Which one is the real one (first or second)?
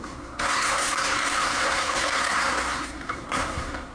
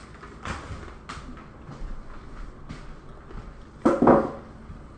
second